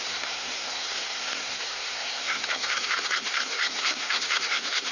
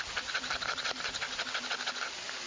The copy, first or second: first